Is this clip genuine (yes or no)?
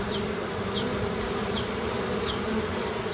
yes